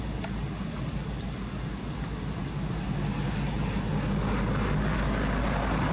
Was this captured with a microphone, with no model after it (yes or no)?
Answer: yes